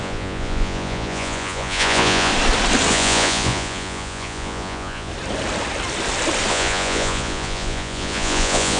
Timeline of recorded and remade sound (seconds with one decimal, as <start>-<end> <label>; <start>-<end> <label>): 0.0-2.3 remade; 2.3-2.9 recorded; 2.9-5.1 remade; 5.1-6.5 recorded; 6.5-8.8 remade